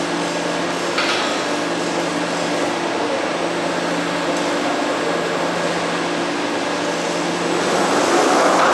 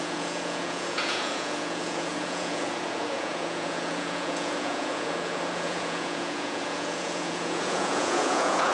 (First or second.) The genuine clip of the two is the first